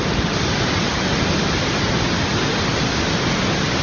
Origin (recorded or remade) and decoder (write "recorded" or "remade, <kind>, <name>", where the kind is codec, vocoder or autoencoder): recorded